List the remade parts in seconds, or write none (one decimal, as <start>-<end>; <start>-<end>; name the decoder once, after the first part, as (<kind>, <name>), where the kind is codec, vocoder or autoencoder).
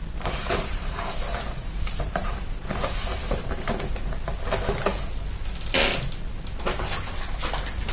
0.4-3.9 (vocoder, BigVGAN v2)